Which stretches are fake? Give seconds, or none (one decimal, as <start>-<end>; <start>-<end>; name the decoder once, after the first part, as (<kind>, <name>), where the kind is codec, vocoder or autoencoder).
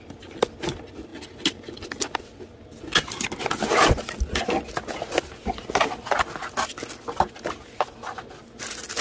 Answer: none